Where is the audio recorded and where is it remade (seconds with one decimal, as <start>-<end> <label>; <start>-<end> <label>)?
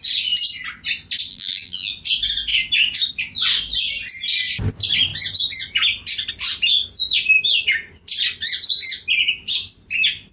0.0-1.3 recorded; 1.3-1.9 remade; 1.9-10.3 recorded